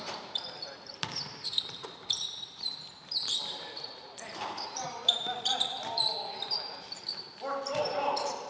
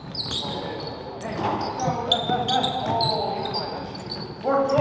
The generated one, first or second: first